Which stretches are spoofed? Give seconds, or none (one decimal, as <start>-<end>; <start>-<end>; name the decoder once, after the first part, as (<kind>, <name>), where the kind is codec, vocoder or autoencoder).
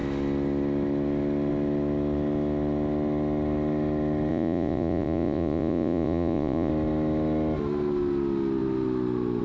4.3-6.7 (vocoder, Vocos)